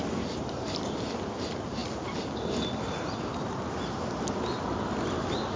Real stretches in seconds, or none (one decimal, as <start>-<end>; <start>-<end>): 0.0-5.6